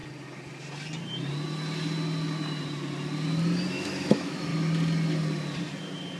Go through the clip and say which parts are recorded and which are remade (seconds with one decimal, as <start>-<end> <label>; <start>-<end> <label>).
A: 0.0-3.7 recorded; 3.7-4.5 remade; 4.5-6.2 recorded